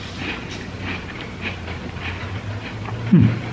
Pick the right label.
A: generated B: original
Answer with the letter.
B